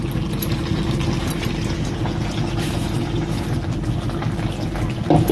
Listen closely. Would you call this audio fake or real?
real